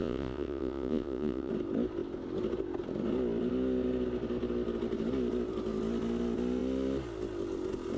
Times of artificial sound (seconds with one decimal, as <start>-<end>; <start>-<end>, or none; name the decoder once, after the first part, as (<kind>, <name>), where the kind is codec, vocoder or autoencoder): 0.0-1.5 (vocoder, Vocos)